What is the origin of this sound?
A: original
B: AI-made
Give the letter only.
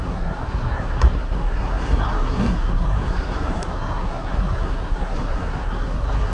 B